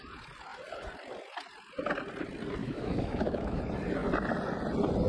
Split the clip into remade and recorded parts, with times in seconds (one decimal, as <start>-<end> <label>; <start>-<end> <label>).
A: 0.0-2.6 recorded; 2.6-3.6 remade; 3.6-5.1 recorded